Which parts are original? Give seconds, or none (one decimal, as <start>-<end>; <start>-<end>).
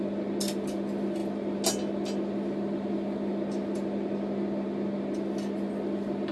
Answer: 0.0-6.3